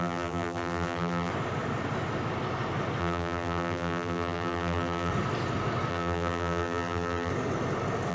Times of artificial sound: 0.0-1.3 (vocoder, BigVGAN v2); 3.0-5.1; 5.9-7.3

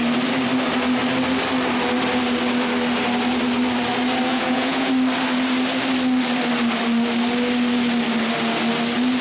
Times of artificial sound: 4.3-4.9 (vocoder, Vocos)

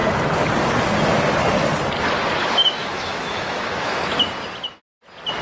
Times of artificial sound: 2.4-4.0 (autoencoder, DAC-VAE)

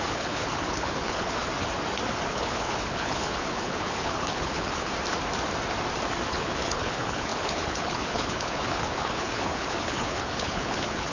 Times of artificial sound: 0.0-1.5 (codec, HILCodec); 2.3-4.9; 6.3-11.1

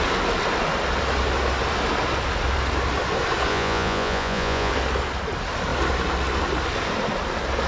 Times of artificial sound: 3.5-4.7 (vocoder, Vocos)